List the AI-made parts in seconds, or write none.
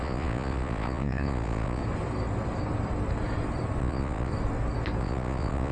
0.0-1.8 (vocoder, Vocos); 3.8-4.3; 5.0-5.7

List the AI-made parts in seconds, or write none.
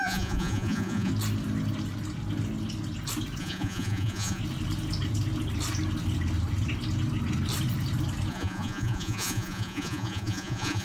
0.0-1.1 (vocoder, Vocos); 3.4-4.4; 8.3-10.8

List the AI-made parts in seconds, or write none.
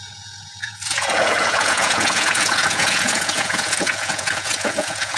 0.0-5.2 (vocoder, Vocos)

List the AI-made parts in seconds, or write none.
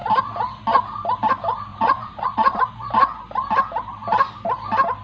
1.7-2.7 (vocoder, Vocos)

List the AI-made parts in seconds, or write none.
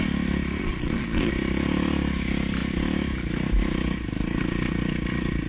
0.6-1.3 (vocoder, Vocos)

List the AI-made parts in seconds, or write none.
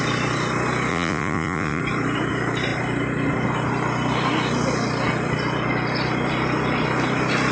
0.9-1.8 (vocoder, Vocos)